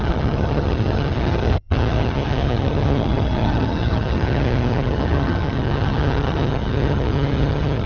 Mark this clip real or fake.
fake